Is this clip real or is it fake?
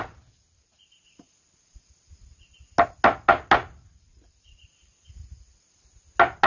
real